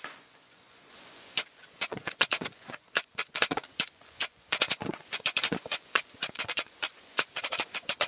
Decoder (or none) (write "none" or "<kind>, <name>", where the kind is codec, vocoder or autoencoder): vocoder, Vocos